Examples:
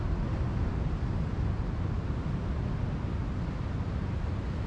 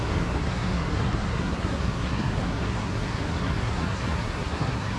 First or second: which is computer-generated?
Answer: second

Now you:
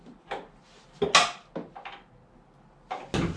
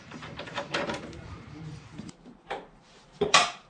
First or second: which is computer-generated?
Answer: second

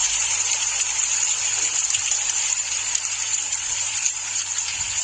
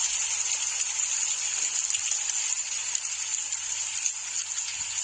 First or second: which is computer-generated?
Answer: first